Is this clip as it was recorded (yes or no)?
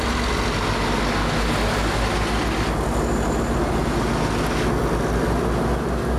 yes